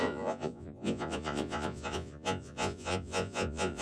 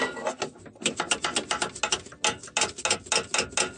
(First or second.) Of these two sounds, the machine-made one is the first